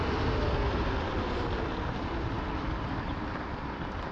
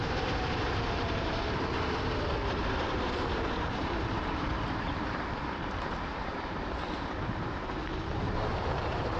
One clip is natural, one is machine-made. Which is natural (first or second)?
first